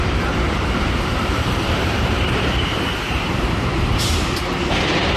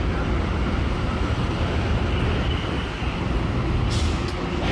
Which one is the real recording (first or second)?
second